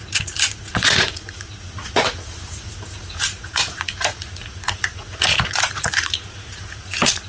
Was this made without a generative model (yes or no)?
no